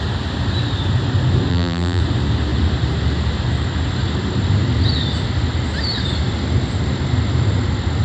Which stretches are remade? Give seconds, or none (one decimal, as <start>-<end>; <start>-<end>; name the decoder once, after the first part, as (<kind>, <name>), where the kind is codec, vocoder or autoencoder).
1.5-2.0 (vocoder, BigVGAN v2)